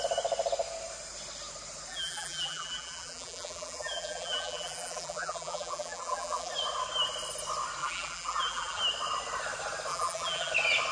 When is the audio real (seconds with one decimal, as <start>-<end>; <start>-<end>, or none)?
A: 0.0-1.9; 6.5-7.8; 8.8-9.9; 10.5-10.9